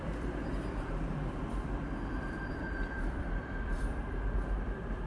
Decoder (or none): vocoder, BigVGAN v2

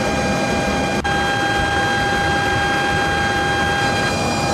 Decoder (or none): none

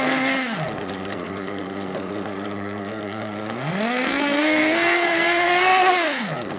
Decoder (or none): codec, SNAC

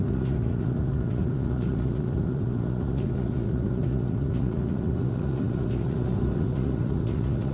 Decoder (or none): vocoder, Vocos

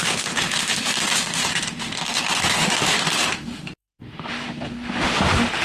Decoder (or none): autoencoder, DAC-VAE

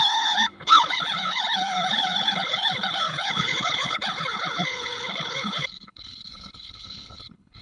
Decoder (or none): codec, HILCodec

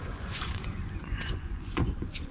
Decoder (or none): vocoder, Vocos